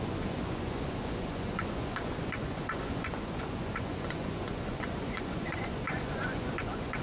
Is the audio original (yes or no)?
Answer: no